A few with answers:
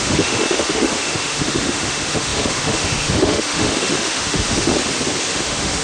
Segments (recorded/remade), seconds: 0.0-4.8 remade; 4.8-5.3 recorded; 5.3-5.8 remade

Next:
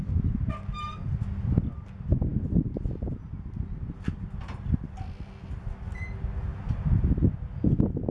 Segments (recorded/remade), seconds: 0.0-8.1 recorded

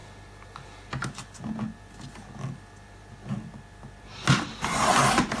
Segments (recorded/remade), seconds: 0.0-5.4 recorded

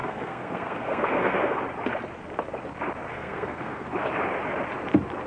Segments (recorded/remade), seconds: 0.0-1.6 remade; 1.6-3.1 recorded; 3.1-3.9 remade; 3.9-5.3 recorded

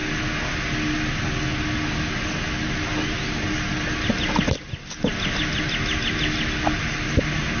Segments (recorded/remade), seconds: 0.0-7.6 recorded

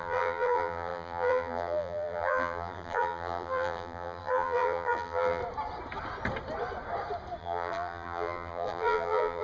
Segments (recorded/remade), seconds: 0.0-5.4 remade; 5.4-7.4 recorded; 7.4-9.4 remade

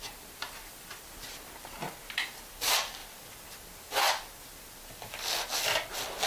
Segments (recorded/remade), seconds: 0.0-6.3 recorded

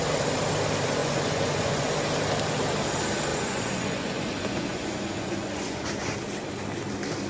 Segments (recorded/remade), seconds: 0.0-1.0 recorded; 1.0-1.9 remade; 1.9-3.3 recorded; 3.3-6.1 remade; 6.1-7.3 recorded